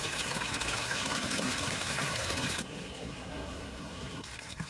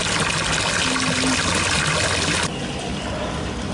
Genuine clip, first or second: second